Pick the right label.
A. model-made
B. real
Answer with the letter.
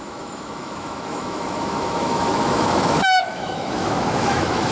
A